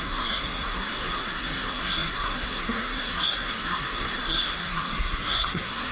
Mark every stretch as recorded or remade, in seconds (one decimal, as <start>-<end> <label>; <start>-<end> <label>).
0.0-5.9 remade